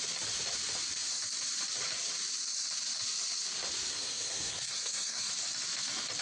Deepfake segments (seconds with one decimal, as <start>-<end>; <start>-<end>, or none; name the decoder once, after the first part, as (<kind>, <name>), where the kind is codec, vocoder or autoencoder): 3.9-5.3 (codec, SNAC)